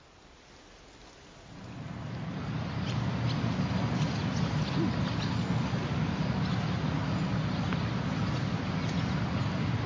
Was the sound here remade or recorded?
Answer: recorded